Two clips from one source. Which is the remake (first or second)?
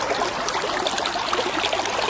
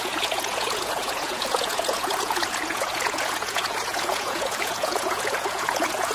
second